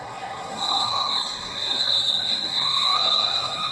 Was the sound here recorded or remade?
remade